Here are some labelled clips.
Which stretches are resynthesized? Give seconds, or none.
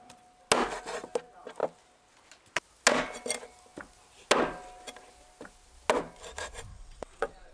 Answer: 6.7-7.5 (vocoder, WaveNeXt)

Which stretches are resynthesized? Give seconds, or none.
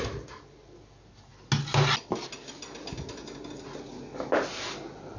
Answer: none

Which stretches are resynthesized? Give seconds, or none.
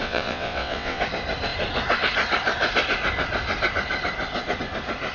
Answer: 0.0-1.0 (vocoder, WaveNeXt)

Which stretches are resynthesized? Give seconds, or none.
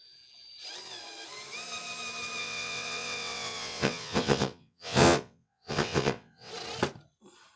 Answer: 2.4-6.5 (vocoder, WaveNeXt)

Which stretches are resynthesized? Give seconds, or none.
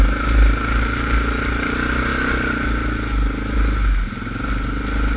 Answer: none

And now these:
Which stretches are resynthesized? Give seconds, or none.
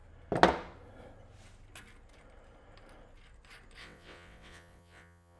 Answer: 3.8-5.4 (vocoder, WaveNeXt)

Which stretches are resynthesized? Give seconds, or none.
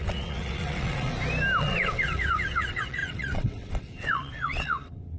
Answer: 0.0-1.1 (vocoder, WaveNeXt); 1.6-5.2